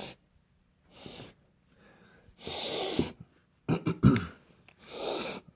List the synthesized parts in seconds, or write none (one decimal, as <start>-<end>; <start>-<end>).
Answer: none